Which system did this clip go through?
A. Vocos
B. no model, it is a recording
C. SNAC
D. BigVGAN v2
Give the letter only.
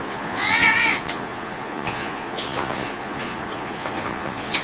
A